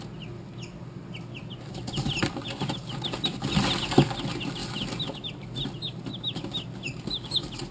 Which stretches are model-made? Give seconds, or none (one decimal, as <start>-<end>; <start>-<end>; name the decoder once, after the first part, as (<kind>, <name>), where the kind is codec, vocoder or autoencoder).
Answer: none